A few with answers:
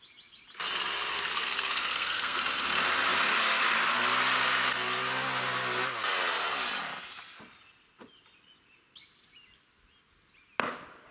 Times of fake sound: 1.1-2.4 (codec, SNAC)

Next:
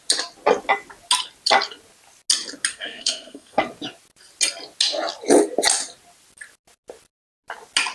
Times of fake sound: 2.7-3.6 (codec, SNAC)

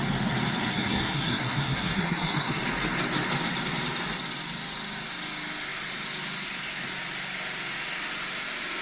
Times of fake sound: 0.7-2.6 (codec, SNAC)

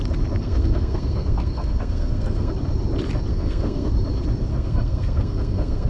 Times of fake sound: 0.4-2.5 (codec, SNAC); 3.3-3.9; 4.5-5.9

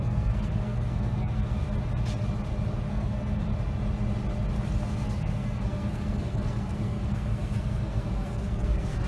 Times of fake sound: 0.0-1.6 (codec, SNAC); 2.9-3.5; 4.9-9.1

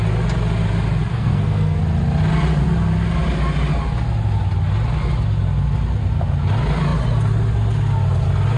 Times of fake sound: 1.1-1.8 (codec, SNAC)

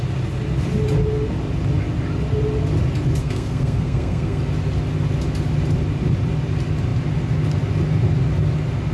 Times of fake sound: 3.2-4.4 (codec, SNAC)